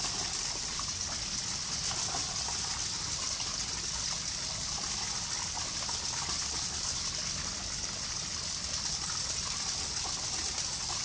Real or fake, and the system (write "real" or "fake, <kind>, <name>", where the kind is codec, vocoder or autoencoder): real